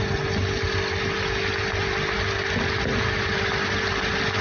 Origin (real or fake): real